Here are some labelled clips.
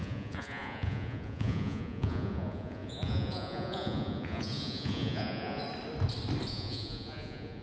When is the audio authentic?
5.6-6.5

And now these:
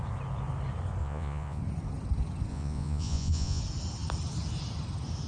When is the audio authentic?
0.0-1.0; 1.6-2.5; 3.6-5.3